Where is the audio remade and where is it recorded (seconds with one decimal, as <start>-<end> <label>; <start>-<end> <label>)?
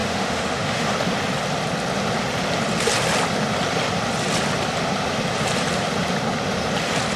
0.0-0.9 remade; 0.9-7.2 recorded